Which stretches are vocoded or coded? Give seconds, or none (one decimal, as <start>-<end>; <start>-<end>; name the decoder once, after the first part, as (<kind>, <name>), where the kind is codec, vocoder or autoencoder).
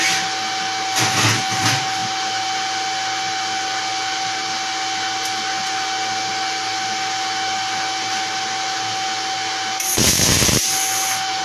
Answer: none